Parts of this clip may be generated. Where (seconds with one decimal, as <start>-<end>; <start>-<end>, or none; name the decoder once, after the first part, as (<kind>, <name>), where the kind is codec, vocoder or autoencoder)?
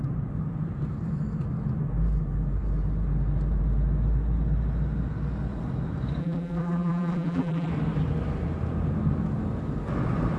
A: 6.2-7.7 (vocoder, BigVGAN v2)